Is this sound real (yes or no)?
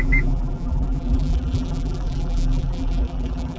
no